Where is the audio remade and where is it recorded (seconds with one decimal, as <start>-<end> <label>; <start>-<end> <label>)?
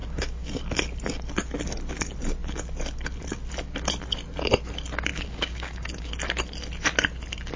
0.0-0.6 remade; 0.6-5.1 recorded; 5.1-6.1 remade; 6.1-7.6 recorded